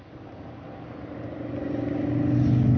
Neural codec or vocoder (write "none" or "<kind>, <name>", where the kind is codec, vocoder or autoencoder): none